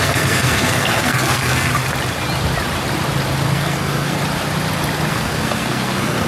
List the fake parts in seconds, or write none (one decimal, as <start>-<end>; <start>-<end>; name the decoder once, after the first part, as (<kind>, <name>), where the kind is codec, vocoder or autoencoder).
0.0-1.7 (codec, SNAC); 3.4-4.2; 5.1-6.3